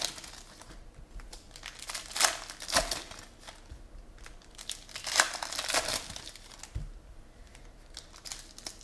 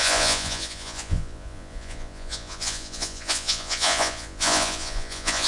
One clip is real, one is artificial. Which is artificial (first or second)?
second